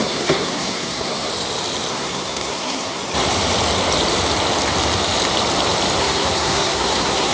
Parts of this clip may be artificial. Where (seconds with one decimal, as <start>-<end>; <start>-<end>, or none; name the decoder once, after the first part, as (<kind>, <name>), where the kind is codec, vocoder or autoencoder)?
0.0-1.3 (codec, SNAC); 1.9-3.0; 6.0-7.3